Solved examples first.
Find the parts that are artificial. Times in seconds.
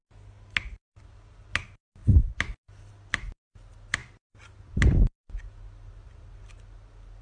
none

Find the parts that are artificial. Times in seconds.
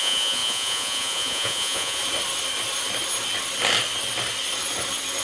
0.0-2.0 (vocoder, Vocos)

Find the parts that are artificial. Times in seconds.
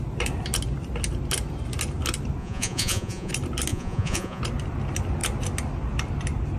2.4-3.3 (vocoder, Vocos); 3.7-4.4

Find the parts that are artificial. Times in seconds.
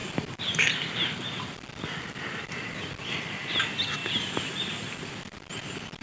none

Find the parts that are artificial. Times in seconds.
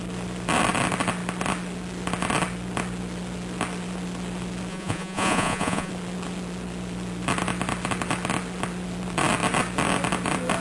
4.7-5.9 (vocoder, Vocos)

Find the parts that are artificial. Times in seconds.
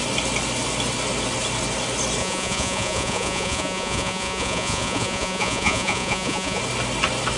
2.2-6.6 (vocoder, Vocos)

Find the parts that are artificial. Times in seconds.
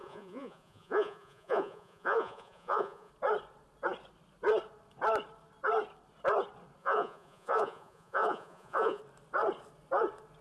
0.0-3.1 (vocoder, Vocos); 6.8-9.0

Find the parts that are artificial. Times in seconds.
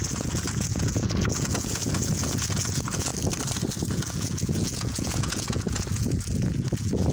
0.0-3.1 (vocoder, Vocos); 3.9-7.1